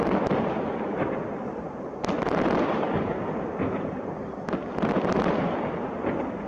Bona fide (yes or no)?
yes